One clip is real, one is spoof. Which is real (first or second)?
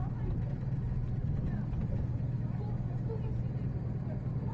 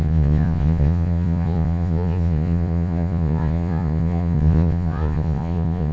first